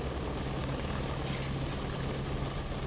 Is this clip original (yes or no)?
yes